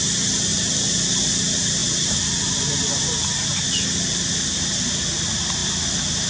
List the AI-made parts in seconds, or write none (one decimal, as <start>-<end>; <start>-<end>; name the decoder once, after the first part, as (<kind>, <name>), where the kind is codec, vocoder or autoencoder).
1.8-4.8 (vocoder, BigVGAN v2); 5.6-6.3